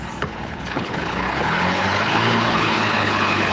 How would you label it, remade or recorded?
remade